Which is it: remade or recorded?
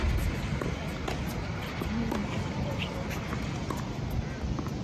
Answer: recorded